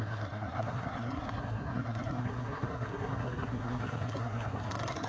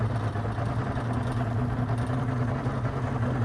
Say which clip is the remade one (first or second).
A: first